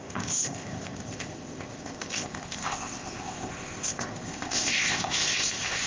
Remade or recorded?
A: remade